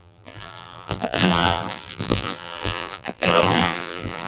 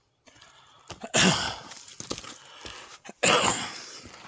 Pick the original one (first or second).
second